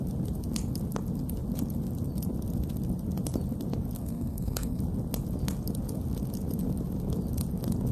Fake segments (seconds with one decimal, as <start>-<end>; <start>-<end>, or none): 4.0-4.8